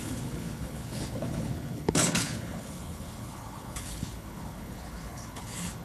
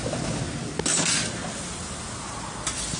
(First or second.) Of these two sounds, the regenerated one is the first